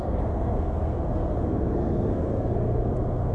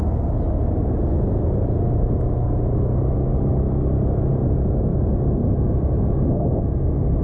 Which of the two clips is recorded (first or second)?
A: second